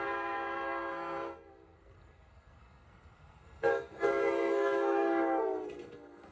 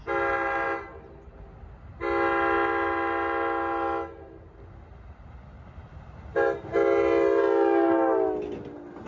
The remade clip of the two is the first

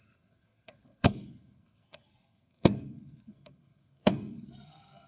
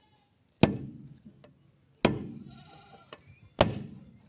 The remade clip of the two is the first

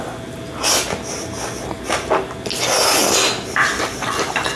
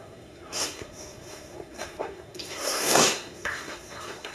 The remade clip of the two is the second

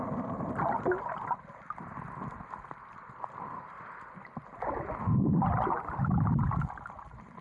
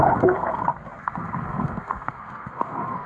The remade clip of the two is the second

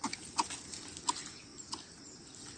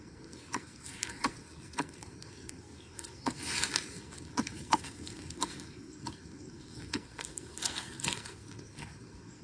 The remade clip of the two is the second